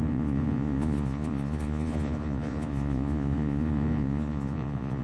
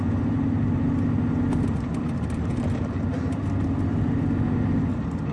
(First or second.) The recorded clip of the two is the second